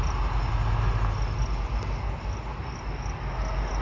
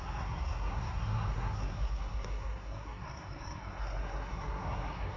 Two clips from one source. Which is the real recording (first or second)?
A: first